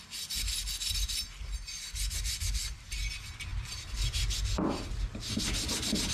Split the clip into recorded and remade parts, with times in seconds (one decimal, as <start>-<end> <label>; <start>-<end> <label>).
0.0-6.1 recorded